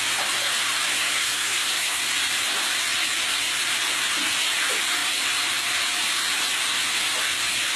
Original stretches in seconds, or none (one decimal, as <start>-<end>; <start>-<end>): 0.0-0.9; 2.0-7.8